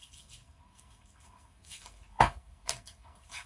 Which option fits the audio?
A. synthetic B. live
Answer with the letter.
A